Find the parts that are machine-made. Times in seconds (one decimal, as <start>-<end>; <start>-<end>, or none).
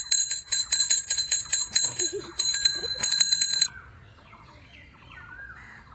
0.0-5.9